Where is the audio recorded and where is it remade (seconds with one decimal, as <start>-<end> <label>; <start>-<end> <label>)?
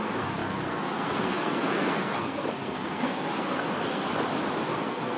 0.0-4.1 remade; 4.1-4.6 recorded; 4.6-5.2 remade